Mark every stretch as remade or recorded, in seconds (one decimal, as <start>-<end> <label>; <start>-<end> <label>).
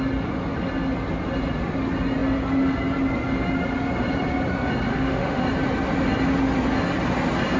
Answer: 0.0-4.9 recorded; 4.9-5.4 remade; 5.4-7.6 recorded